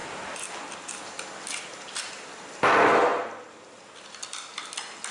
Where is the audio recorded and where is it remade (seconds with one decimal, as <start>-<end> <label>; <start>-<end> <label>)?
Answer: 0.0-5.1 recorded